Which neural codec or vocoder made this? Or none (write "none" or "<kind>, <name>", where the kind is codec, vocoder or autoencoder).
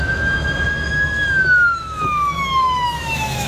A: autoencoder, DAC-VAE